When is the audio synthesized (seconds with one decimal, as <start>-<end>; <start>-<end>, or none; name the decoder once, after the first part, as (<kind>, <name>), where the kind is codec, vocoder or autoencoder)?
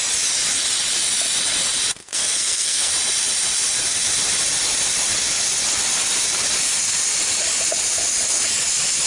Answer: 2.0-2.9 (codec, SNAC)